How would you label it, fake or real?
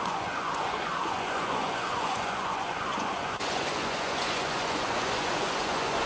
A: fake